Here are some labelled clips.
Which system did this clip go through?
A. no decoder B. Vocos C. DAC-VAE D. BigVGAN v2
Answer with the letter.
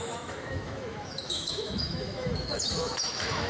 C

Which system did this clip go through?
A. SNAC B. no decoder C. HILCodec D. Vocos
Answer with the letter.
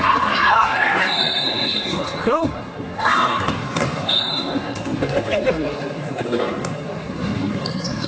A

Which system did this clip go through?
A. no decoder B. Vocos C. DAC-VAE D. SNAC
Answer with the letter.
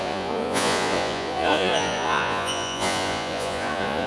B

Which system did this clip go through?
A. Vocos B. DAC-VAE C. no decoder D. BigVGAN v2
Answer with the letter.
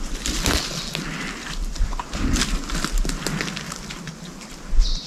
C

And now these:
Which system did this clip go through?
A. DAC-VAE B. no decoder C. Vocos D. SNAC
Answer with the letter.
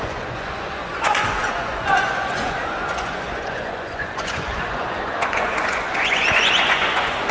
C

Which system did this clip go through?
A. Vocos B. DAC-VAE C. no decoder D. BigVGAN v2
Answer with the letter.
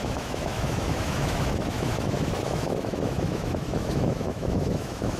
B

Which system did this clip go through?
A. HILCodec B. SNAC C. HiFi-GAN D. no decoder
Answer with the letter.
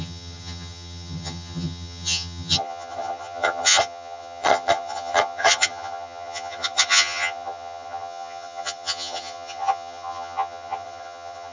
C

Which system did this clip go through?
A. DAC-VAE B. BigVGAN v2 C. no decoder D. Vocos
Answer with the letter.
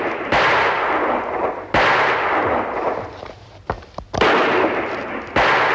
C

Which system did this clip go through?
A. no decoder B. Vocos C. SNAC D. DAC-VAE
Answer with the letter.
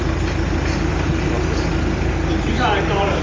A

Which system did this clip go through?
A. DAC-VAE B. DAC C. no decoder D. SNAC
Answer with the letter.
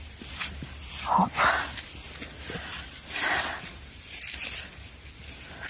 C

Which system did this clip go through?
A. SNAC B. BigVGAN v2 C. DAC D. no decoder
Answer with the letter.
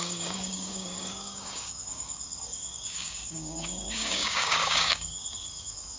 C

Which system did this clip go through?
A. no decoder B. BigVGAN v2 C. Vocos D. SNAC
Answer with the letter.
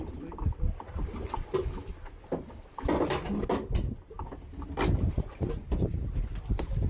A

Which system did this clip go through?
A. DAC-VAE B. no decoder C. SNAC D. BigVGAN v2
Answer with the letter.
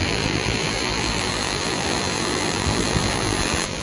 D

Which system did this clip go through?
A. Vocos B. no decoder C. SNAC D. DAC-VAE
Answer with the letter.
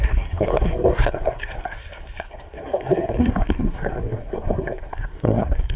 C